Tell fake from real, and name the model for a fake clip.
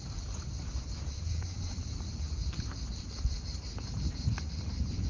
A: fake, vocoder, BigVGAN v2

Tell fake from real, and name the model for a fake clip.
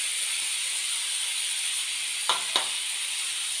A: real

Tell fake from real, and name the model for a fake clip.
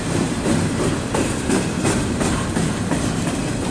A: fake, vocoder, BigVGAN v2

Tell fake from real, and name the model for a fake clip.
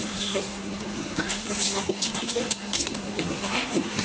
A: fake, codec, SNAC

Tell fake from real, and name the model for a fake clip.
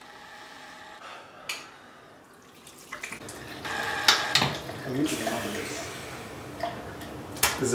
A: real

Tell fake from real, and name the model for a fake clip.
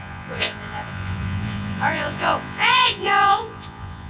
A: fake, vocoder, Vocos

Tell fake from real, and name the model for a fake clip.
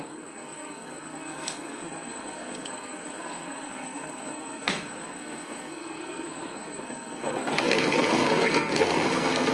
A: fake, codec, SNAC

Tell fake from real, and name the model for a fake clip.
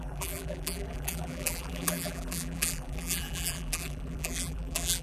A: fake, vocoder, BigVGAN v2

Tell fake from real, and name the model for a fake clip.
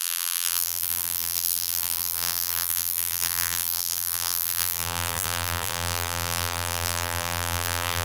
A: fake, vocoder, BigVGAN v2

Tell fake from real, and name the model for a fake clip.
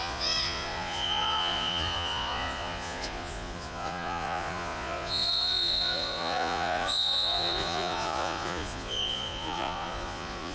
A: fake, vocoder, Vocos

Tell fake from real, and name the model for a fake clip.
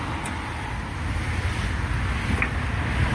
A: real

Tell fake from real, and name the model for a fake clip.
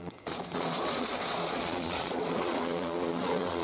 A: fake, vocoder, Vocos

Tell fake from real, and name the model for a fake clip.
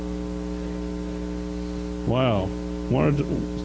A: real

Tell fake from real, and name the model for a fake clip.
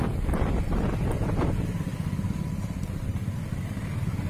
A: real